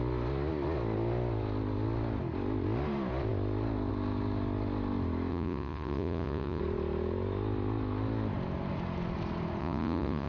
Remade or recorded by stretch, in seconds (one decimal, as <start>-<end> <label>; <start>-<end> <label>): 0.0-5.3 recorded; 5.3-6.6 remade; 6.6-9.6 recorded; 9.6-10.3 remade